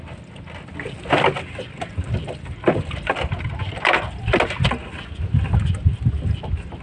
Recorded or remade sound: recorded